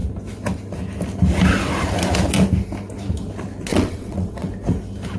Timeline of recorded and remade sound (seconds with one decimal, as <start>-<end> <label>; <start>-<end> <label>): 0.0-3.7 recorded; 3.7-4.5 remade; 4.5-5.2 recorded